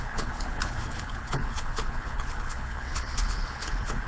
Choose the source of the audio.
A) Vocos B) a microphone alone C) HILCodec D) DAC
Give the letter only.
C